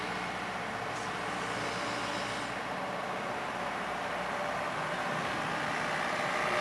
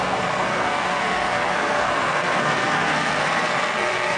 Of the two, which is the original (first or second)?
first